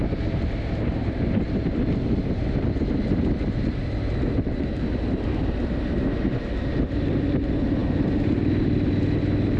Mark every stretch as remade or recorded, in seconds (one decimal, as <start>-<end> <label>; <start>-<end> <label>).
0.0-9.6 recorded